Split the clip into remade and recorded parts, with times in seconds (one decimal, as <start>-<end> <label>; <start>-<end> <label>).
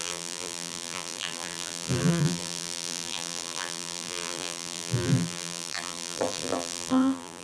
0.0-7.4 remade